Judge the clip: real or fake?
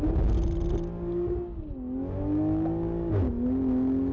real